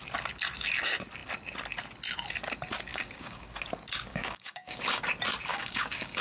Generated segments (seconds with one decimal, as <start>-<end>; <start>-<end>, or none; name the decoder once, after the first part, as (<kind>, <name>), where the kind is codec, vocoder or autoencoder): 2.9-3.6 (codec, DAC); 4.1-5.0; 5.5-6.2